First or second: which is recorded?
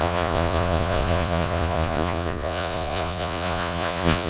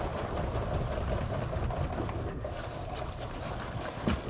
second